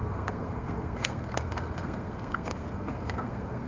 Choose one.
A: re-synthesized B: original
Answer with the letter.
A